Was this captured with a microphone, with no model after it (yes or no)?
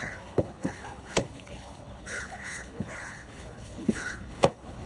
no